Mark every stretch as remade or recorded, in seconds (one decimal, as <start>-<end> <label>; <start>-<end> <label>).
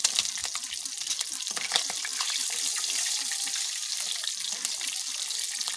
0.0-5.8 recorded